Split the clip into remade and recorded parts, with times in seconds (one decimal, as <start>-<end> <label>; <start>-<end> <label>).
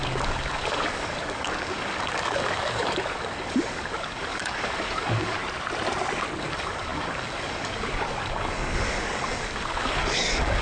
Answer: 0.0-5.4 remade; 5.4-6.4 recorded; 6.4-10.6 remade